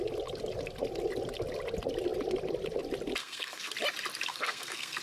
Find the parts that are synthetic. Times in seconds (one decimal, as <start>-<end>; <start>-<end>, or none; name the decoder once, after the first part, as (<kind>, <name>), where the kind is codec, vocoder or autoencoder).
3.2-3.7 (codec, SNAC); 4.3-5.0

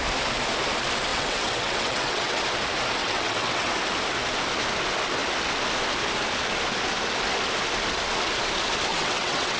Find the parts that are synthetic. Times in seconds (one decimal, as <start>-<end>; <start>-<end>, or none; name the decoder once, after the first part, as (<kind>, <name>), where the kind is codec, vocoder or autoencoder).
1.1-2.4 (vocoder, WaveNeXt); 3.0-3.7; 8.9-9.6